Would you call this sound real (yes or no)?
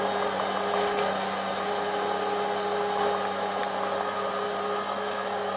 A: yes